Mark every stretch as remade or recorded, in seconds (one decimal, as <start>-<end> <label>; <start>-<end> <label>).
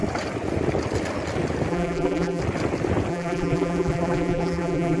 0.0-1.7 recorded; 1.7-2.4 remade; 2.4-3.1 recorded; 3.1-5.0 remade